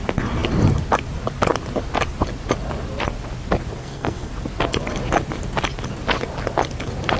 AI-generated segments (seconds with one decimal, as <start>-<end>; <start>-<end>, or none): 3.8-4.3